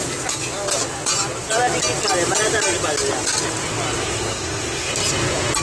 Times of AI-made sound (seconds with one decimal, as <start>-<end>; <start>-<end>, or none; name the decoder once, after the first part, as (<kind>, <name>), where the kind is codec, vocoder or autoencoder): 4.0-4.9 (codec, SNAC)